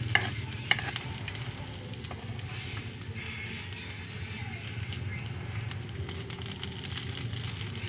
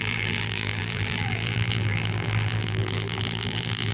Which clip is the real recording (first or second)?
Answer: first